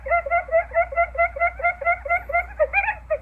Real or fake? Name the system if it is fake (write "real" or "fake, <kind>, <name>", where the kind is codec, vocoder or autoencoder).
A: real